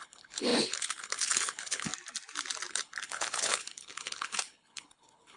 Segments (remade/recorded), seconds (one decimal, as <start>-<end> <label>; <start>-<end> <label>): 0.0-1.9 remade; 1.9-2.7 recorded; 2.7-5.4 remade